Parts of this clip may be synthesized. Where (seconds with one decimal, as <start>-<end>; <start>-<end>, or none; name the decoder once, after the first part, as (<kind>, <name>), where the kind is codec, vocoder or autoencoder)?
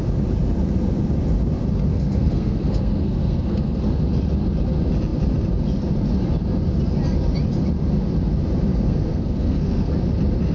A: 1.9-3.8 (codec, SNAC); 8.7-9.9